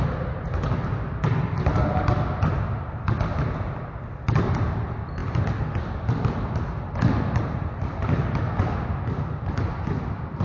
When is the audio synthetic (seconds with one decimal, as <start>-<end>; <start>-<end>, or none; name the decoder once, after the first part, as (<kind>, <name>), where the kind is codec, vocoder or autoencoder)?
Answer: none